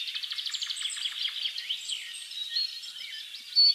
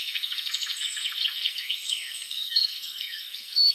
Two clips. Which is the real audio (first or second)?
first